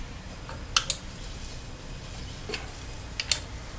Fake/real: real